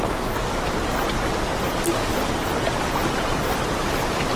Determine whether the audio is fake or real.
real